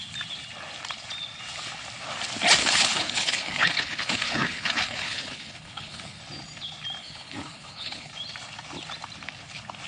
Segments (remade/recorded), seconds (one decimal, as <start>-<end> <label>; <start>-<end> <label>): 0.0-2.6 recorded; 2.6-6.2 remade; 6.2-7.0 recorded; 7.0-8.1 remade; 8.1-9.9 recorded